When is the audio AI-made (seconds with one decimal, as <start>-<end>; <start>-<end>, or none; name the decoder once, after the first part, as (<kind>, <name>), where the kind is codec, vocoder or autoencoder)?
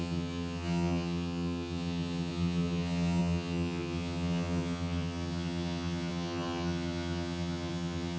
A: 0.0-8.2 (vocoder, HiFi-GAN)